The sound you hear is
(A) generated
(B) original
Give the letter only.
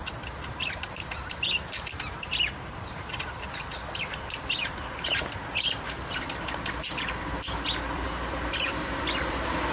A